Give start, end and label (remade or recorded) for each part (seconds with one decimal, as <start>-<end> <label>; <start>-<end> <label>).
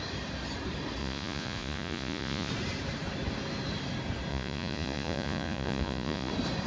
0.0-1.0 recorded; 1.0-2.5 remade; 2.5-4.3 recorded; 4.3-6.3 remade; 6.3-6.7 recorded